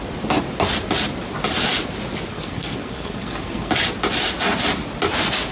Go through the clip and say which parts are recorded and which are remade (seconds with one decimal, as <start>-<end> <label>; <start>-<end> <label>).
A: 0.0-2.3 recorded; 2.3-3.7 remade; 3.7-5.5 recorded